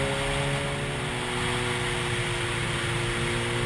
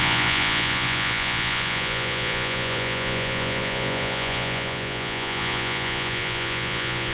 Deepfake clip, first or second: second